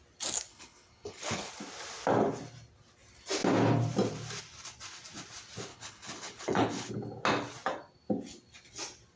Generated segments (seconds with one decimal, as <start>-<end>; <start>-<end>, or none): 0.5-1.5; 5.7-6.9

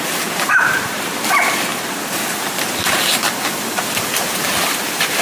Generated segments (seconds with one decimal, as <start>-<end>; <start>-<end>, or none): 0.0-5.2